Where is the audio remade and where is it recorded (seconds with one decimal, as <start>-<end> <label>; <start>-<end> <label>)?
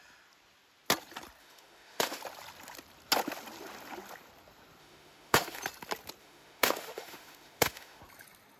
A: 0.0-1.4 recorded; 1.4-2.2 remade; 2.2-4.8 recorded; 4.8-5.6 remade; 5.6-6.2 recorded; 6.2-8.0 remade; 8.0-8.6 recorded